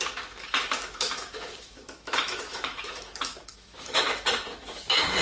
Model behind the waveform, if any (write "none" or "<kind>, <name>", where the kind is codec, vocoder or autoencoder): autoencoder, DAC-VAE